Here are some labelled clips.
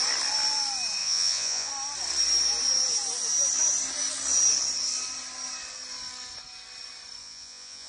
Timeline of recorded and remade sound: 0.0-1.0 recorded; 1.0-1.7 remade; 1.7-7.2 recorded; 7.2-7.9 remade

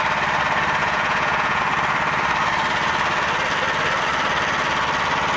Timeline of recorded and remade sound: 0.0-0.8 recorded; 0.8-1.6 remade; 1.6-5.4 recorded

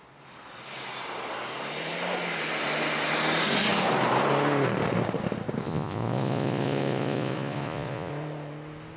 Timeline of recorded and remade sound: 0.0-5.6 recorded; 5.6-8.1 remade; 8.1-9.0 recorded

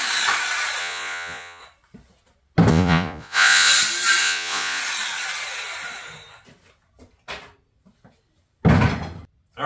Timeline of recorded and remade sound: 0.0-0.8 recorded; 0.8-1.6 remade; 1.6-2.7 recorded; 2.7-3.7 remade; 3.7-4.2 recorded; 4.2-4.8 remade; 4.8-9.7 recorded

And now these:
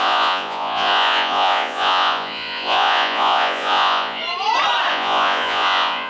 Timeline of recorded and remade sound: 0.0-4.2 remade; 4.2-4.9 recorded; 4.9-6.1 remade